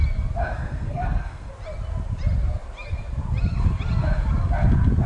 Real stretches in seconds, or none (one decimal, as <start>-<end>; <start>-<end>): 0.0-0.4; 1.5-5.1